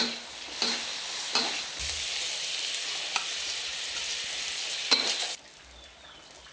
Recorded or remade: recorded